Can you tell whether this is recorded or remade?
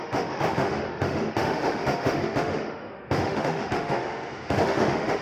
remade